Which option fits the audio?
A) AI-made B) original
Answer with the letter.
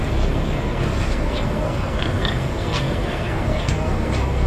A